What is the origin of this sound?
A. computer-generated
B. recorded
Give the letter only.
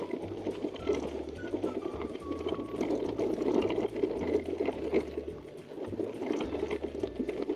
B